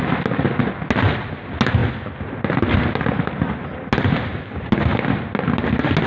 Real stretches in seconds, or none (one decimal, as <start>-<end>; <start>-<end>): 0.0-6.1